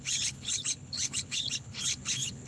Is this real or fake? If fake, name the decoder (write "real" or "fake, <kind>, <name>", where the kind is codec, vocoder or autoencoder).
fake, codec, HILCodec